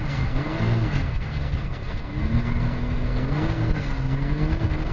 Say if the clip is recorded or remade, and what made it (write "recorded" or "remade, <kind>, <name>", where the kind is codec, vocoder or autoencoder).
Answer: remade, codec, SNAC